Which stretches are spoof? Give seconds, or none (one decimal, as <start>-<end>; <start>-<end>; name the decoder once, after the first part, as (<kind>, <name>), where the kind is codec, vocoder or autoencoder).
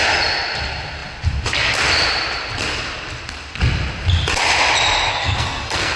5.1-6.0 (codec, SNAC)